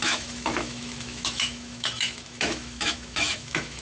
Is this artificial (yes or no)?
yes